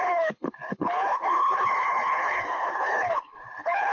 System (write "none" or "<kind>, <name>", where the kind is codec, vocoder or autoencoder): codec, HILCodec